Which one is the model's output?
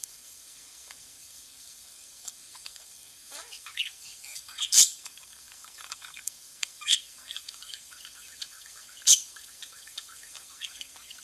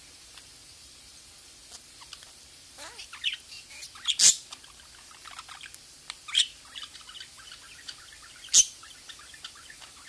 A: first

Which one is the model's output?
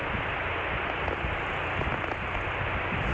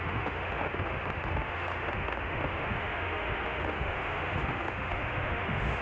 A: second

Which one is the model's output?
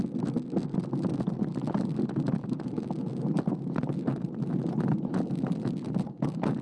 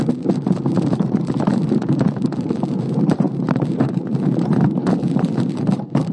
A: second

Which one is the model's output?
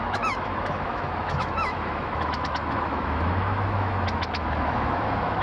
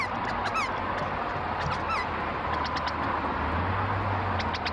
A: first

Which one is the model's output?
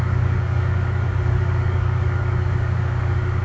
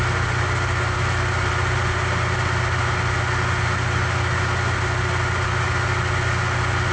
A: first